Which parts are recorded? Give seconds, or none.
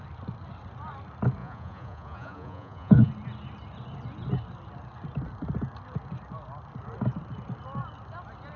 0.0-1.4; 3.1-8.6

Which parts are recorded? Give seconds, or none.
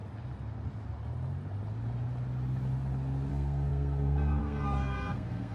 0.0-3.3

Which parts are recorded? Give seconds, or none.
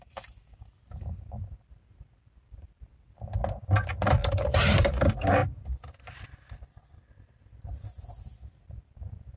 0.0-9.4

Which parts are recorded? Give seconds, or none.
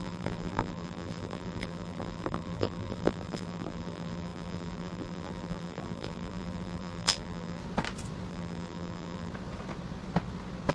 7.6-8.3; 9.3-10.7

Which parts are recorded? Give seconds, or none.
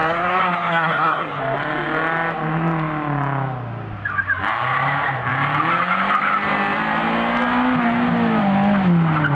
1.4-9.3